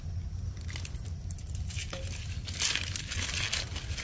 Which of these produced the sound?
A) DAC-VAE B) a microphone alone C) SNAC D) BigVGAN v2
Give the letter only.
B